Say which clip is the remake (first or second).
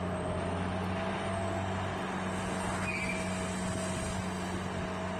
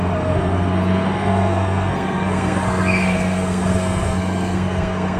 second